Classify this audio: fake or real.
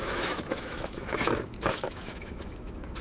fake